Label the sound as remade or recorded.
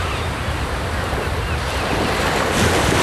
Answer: recorded